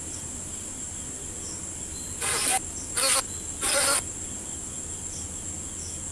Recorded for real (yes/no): yes